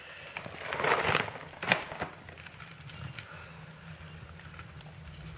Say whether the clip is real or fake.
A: real